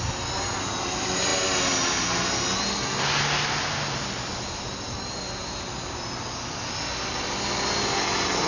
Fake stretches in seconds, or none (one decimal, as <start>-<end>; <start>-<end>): none